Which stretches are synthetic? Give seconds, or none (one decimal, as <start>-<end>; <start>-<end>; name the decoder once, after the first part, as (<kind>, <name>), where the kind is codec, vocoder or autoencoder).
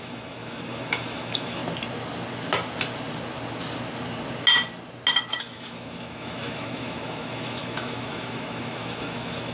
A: 0.0-1.6 (autoencoder, DAC-VAE); 5.3-9.5